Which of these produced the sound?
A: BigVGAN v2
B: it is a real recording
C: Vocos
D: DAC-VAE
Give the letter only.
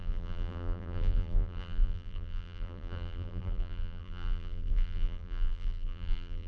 A